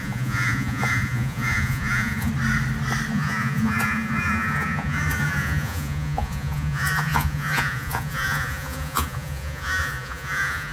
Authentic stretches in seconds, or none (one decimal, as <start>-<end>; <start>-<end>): 2.3-3.1